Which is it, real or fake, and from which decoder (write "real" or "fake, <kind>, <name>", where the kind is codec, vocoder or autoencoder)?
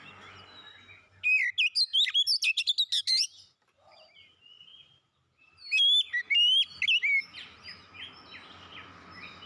real